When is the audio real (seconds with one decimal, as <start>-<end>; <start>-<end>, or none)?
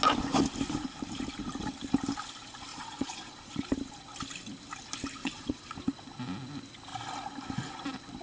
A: 0.0-2.7; 3.5-5.2; 5.8-8.2